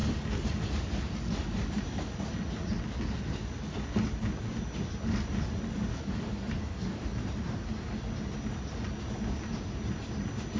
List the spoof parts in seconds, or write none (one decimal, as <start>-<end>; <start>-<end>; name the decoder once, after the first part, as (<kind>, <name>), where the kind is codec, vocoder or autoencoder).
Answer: 5.9-7.0 (codec, DAC)